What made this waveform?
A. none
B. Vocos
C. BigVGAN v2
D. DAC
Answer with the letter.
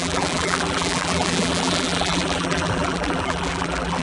C